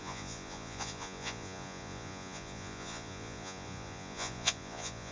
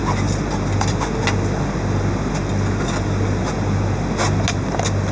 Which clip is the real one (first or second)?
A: second